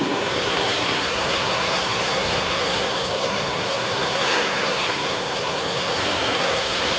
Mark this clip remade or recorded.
remade